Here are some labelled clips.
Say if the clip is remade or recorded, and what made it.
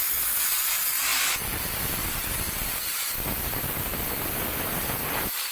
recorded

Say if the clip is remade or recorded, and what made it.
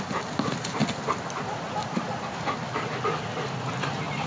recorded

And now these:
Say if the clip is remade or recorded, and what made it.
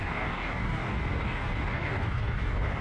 remade, codec, DAC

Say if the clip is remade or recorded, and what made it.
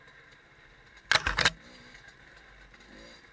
recorded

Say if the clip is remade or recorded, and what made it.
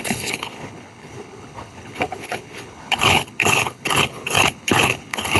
remade, codec, HILCodec